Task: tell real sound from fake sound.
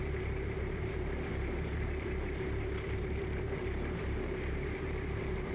fake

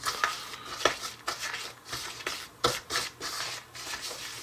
real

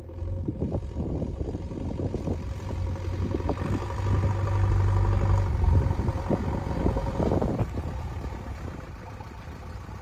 fake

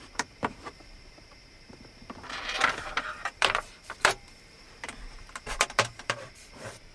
fake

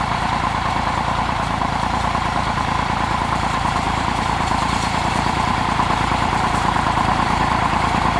fake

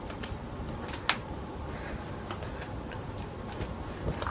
real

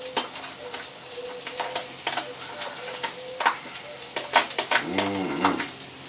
real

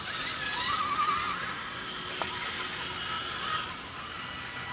real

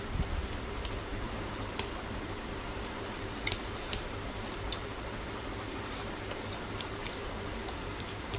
fake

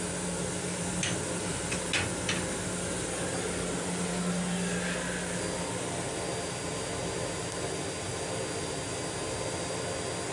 real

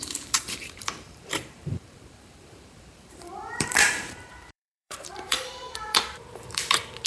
fake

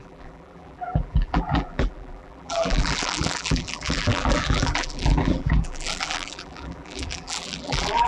fake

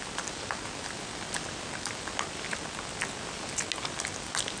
real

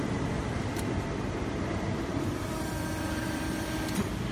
fake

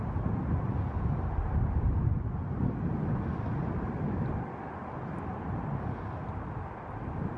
real